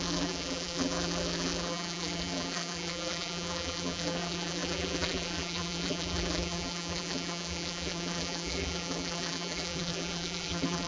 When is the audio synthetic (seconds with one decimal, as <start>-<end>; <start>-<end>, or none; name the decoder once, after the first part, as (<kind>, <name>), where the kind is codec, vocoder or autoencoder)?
0.0-10.9 (vocoder, BigVGAN v2)